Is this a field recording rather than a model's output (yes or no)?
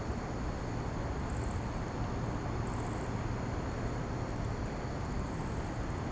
yes